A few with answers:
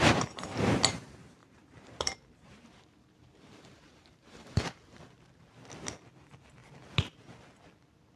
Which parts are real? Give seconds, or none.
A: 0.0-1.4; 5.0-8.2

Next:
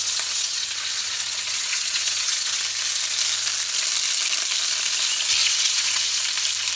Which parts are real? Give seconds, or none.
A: 2.6-5.4; 6.2-6.8